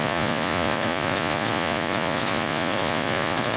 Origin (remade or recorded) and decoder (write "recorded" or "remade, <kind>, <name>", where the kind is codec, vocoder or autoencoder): remade, vocoder, Vocos